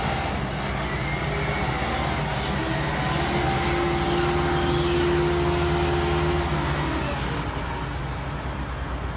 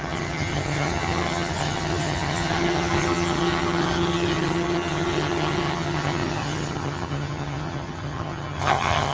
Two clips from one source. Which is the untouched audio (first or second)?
first